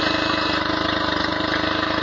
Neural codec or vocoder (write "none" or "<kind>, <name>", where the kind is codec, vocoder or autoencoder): none